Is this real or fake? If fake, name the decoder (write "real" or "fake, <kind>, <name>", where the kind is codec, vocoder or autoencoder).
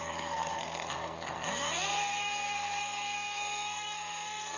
fake, codec, SNAC